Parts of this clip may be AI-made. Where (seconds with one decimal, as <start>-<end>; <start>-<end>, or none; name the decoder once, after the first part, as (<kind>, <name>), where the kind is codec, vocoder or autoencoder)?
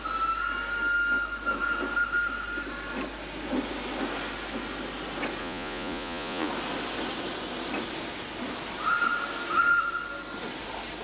5.4-6.5 (vocoder, Vocos)